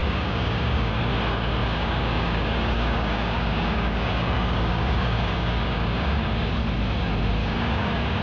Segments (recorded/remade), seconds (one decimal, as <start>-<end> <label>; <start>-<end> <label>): 0.0-1.0 remade; 1.0-1.6 recorded; 1.6-6.5 remade; 6.5-7.4 recorded; 7.4-8.2 remade